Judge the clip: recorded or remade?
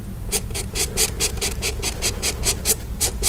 remade